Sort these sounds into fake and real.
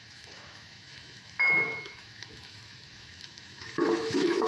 fake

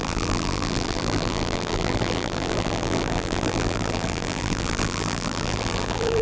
fake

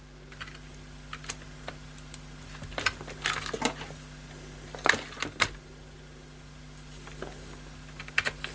real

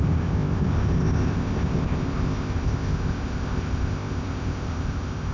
fake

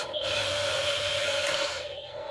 fake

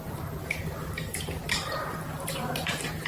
fake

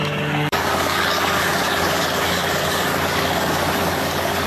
fake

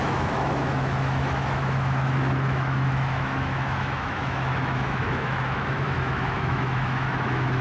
fake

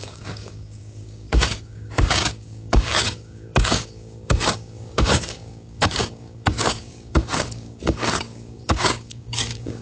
fake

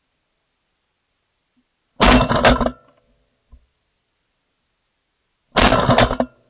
real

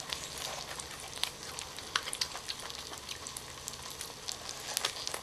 real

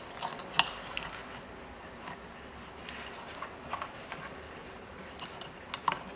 real